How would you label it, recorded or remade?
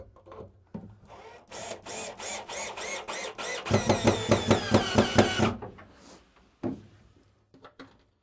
recorded